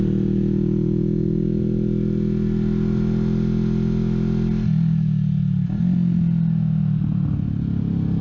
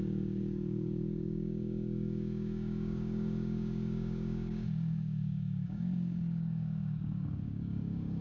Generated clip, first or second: second